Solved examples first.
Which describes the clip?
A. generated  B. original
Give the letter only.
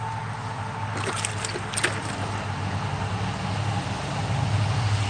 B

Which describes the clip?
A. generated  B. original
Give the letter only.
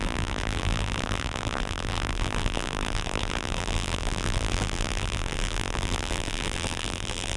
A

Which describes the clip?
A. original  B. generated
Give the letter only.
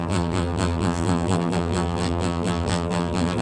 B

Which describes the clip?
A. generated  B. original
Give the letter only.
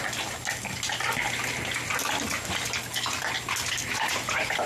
B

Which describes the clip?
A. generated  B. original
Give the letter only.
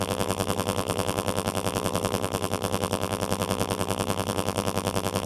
A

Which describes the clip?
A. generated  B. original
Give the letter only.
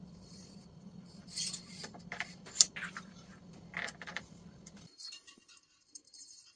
A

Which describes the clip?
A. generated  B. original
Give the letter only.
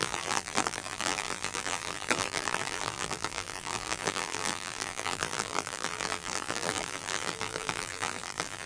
A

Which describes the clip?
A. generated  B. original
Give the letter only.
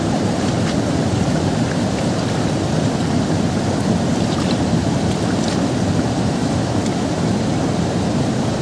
B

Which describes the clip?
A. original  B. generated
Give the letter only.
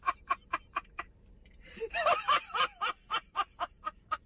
B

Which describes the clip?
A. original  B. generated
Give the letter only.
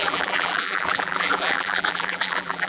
B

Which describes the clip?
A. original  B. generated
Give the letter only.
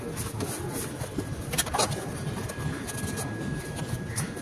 A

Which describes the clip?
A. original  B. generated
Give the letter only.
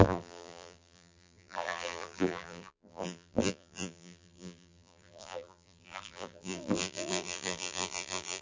B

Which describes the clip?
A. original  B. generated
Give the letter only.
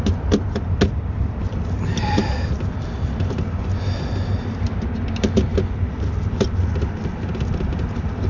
A